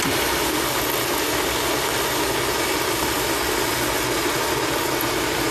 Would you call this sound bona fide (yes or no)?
yes